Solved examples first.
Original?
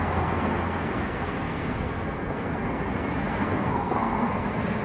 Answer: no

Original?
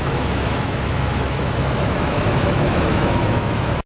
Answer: no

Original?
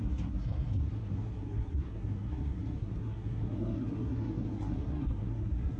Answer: no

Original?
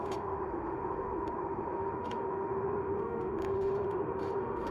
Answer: no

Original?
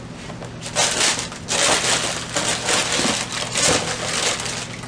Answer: yes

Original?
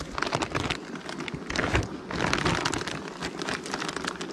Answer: yes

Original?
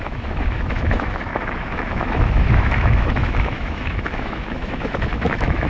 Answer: no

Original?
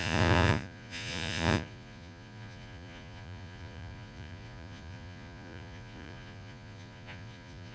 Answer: no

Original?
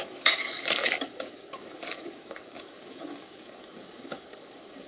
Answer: no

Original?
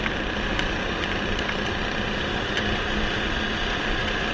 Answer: yes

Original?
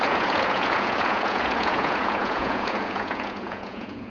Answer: no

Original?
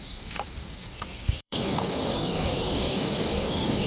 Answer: no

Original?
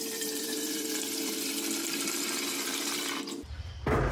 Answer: no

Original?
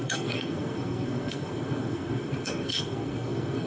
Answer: no